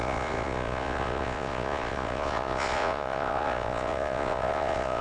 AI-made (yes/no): yes